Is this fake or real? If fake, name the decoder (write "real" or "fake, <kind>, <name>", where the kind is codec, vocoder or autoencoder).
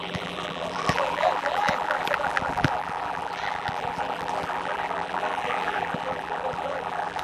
fake, vocoder, BigVGAN v2